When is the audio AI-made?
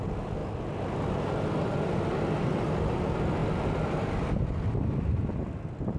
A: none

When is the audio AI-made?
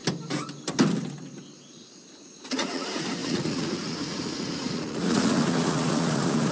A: 2.2-6.5 (vocoder, Vocos)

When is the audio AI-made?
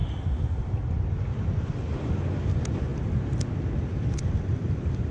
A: none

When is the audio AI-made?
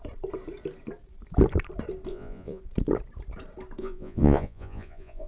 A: 2.1-2.6 (vocoder, Vocos); 3.8-5.3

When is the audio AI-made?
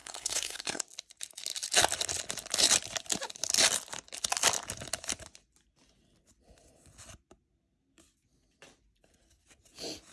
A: 0.0-0.8 (codec, SNAC)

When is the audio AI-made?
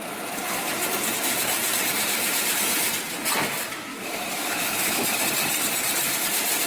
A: 3.9-5.0 (autoencoder, DAC-VAE)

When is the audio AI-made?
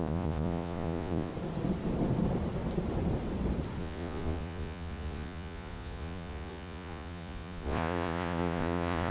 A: 0.0-1.3 (vocoder, Vocos); 3.8-9.1